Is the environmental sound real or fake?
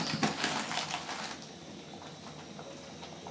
real